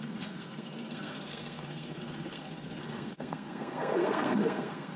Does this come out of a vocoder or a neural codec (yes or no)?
yes